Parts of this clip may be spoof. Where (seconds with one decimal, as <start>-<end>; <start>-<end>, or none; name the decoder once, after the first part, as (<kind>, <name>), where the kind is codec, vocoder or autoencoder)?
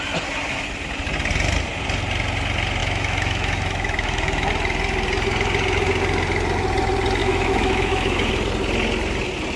2.8-4.5 (autoencoder, DAC-VAE); 7.2-8.3